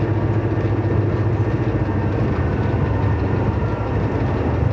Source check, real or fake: real